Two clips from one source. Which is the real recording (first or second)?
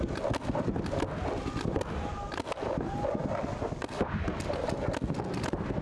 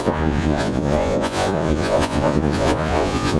first